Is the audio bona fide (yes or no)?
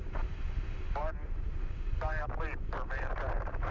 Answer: no